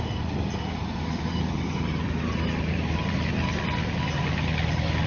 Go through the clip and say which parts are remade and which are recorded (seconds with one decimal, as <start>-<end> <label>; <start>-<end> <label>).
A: 0.0-0.8 recorded; 0.8-3.9 remade; 3.9-5.1 recorded